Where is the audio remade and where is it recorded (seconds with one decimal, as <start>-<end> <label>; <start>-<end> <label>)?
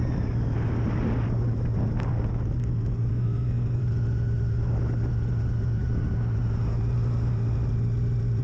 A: 0.0-3.1 recorded; 3.1-3.8 remade; 3.8-8.4 recorded